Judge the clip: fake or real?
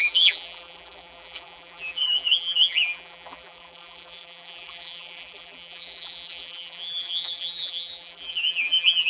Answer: fake